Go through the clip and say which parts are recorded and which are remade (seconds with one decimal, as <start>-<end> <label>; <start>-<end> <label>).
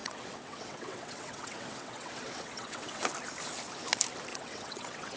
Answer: 0.0-3.1 remade; 3.1-4.3 recorded; 4.3-5.2 remade